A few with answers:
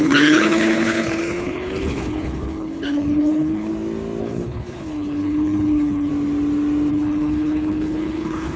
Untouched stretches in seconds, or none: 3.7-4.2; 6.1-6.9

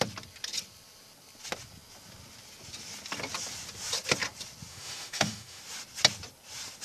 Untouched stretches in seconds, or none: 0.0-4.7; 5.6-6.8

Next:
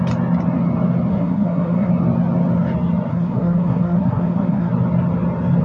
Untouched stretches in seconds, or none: 0.0-1.1; 1.9-3.1; 4.7-5.6

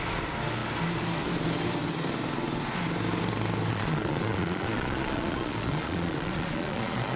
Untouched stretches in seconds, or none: 0.0-3.7